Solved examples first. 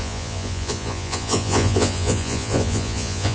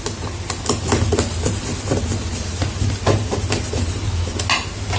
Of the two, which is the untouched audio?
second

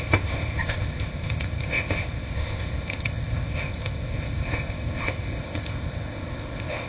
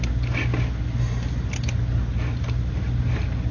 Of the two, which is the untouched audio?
second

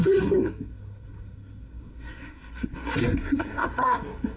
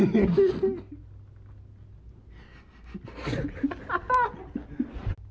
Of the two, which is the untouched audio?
second